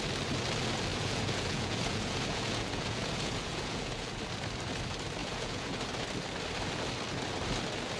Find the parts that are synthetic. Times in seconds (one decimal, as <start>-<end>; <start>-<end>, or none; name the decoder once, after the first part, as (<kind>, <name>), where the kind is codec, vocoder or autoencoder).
0.9-4.2 (vocoder, Vocos); 5.2-5.8

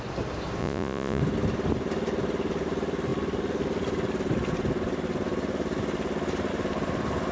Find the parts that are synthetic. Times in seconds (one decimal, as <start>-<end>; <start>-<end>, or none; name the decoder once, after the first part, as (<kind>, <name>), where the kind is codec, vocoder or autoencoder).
0.6-1.2 (vocoder, Vocos)

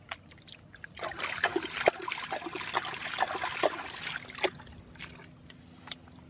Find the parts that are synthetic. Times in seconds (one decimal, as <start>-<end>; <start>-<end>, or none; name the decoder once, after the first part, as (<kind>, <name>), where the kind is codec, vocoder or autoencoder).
none

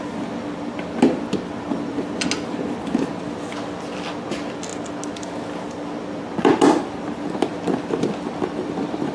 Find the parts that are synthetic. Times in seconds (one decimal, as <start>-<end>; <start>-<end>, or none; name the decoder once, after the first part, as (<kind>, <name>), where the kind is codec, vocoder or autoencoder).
none

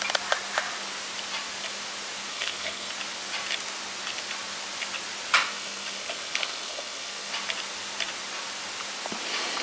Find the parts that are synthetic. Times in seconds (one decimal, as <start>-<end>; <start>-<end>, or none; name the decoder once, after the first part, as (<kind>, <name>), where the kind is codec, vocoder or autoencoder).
2.3-2.9 (codec, SNAC); 5.5-7.3

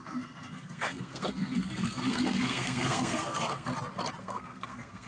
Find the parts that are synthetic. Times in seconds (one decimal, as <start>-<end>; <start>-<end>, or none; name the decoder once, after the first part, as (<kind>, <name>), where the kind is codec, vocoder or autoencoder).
0.0-3.7 (codec, SNAC); 4.2-5.1

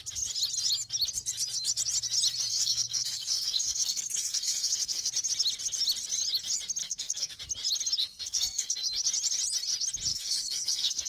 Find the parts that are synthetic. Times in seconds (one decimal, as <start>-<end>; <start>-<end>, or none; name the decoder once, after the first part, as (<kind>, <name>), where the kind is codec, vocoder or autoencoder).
2.5-5.1 (codec, SNAC); 6.8-7.4; 8.0-8.8; 10.1-11.1

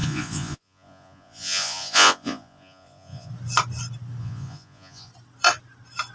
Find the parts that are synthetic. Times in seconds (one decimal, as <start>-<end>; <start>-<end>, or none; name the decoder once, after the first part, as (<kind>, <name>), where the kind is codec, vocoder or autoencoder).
0.0-3.3 (vocoder, Vocos); 4.2-5.1